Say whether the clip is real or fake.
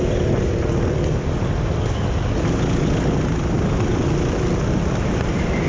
real